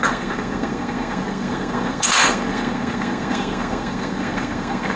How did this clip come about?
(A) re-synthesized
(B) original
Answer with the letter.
A